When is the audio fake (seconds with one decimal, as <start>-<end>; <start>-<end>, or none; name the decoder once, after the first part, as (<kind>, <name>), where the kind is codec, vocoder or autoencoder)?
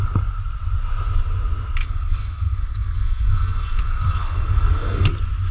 1.8-5.1 (codec, SNAC)